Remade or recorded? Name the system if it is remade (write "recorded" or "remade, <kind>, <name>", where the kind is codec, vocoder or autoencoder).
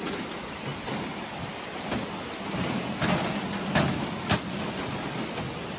recorded